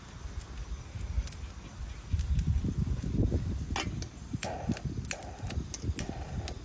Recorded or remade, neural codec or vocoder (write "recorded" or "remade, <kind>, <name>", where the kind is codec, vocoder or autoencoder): recorded